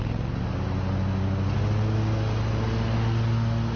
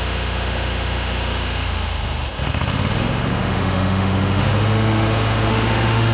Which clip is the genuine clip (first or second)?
first